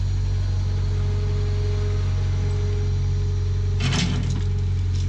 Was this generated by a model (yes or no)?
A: no